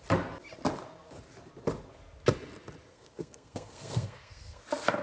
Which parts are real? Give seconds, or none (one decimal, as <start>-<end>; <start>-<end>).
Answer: 0.0-2.9; 4.6-5.0